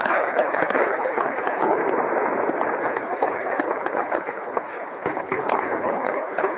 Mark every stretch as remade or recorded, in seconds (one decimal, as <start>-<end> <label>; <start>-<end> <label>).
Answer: 0.0-1.8 remade; 1.8-2.8 recorded; 2.8-6.6 remade